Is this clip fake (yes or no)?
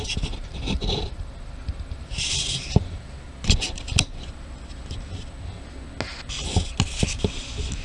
no